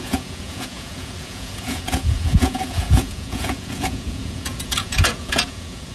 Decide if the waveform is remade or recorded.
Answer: remade